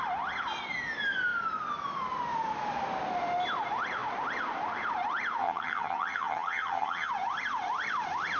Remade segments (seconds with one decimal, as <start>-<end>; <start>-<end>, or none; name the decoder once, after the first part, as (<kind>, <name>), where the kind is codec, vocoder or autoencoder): 5.4-7.1 (vocoder, HiFi-GAN)